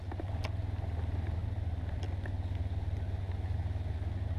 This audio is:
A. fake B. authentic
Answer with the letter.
B